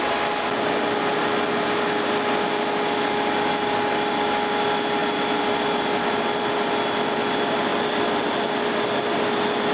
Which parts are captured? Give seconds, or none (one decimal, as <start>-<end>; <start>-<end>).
0.0-9.7